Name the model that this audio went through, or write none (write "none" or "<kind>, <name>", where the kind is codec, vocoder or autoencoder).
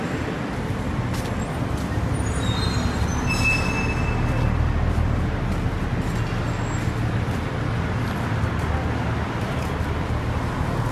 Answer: none